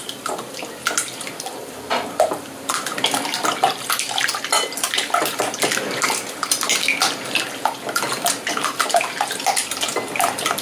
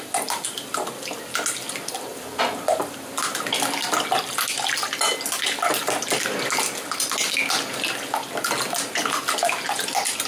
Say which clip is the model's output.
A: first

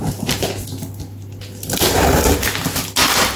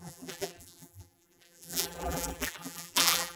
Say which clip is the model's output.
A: second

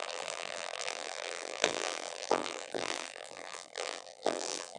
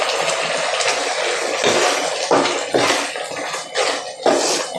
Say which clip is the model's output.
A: first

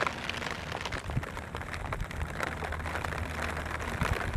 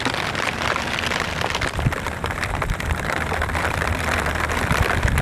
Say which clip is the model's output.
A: second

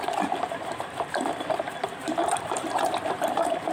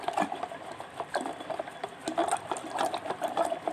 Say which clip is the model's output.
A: first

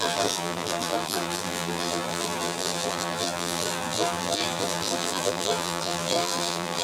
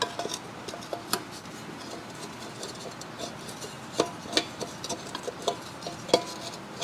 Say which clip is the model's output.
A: first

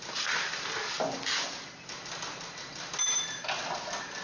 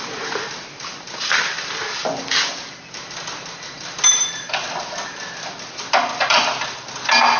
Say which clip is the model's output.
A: second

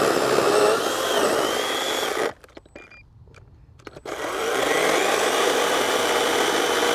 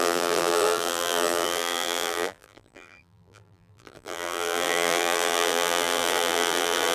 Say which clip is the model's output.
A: second